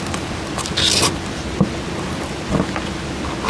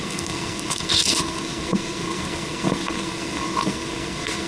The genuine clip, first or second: first